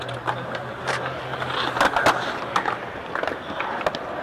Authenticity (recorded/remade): recorded